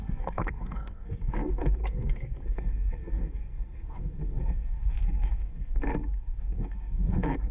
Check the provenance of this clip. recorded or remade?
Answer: remade